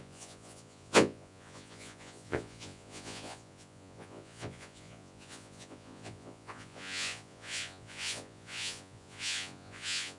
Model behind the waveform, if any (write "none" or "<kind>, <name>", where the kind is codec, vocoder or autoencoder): vocoder, Vocos